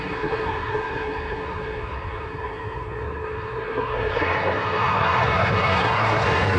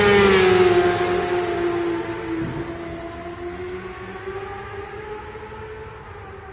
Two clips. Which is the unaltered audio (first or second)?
second